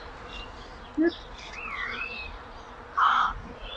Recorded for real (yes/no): yes